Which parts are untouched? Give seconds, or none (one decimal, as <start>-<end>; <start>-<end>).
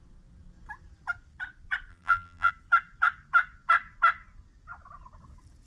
0.0-1.9; 2.5-5.7